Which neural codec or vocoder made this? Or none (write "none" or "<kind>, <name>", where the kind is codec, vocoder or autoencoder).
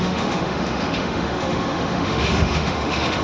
autoencoder, DAC-VAE